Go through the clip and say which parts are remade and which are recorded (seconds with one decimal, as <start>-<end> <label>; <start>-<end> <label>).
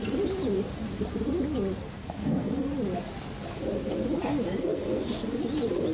0.0-2.0 recorded; 2.0-2.7 remade; 2.7-4.6 recorded; 4.6-5.3 remade; 5.3-5.9 recorded